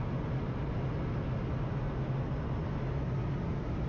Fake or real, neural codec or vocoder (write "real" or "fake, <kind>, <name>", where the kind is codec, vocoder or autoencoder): real